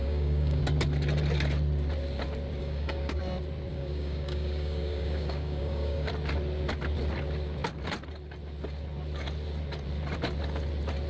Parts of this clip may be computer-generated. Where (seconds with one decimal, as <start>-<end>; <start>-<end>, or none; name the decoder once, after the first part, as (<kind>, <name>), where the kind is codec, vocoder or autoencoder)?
0.0-0.6 (codec, DAC); 2.6-3.2; 3.7-6.1